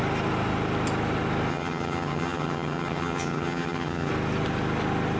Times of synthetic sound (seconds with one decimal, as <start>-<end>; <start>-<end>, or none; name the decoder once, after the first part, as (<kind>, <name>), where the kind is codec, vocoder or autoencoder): 1.5-4.1 (vocoder, HiFi-GAN)